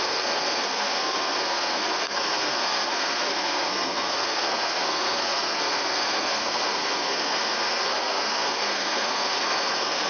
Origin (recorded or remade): remade